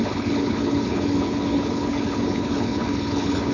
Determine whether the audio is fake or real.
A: fake